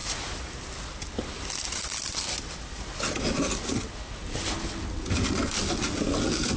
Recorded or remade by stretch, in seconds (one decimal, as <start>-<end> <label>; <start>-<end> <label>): 0.0-6.6 recorded